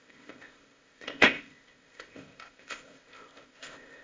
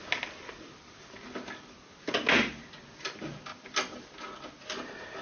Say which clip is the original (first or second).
second